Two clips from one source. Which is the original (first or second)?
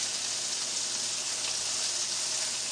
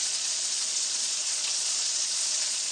first